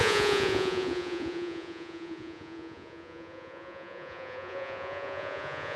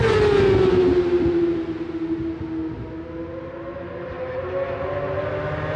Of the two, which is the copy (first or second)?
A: first